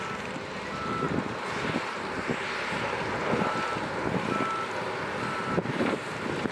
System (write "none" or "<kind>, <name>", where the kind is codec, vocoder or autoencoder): none